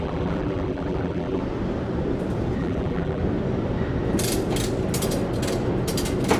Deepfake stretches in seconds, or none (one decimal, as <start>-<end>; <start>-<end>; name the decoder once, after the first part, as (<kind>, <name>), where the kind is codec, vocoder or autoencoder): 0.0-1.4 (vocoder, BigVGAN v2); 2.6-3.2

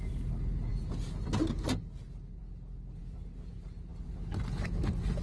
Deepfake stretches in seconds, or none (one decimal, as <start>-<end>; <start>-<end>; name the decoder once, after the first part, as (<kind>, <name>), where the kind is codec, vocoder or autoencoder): none

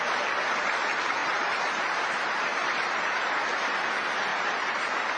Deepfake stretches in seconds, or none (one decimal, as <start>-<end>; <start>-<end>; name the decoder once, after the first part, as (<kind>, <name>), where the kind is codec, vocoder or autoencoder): 1.2-3.3 (vocoder, BigVGAN v2); 4.3-5.2

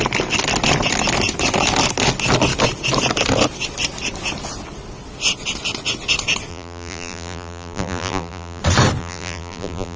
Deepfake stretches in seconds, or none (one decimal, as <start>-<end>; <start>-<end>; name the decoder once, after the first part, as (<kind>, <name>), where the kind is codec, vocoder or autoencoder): 6.5-8.6 (vocoder, BigVGAN v2); 9.0-10.0

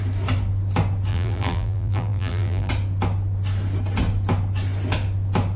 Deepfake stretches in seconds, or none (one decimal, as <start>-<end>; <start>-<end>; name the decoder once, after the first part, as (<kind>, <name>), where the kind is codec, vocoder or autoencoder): 1.1-2.7 (vocoder, BigVGAN v2)